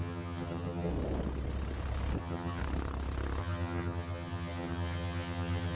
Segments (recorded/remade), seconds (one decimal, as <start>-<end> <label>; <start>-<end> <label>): 0.0-0.9 remade; 0.9-2.2 recorded; 2.2-2.6 remade; 2.6-3.4 recorded; 3.4-5.8 remade